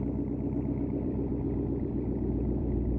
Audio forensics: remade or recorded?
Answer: remade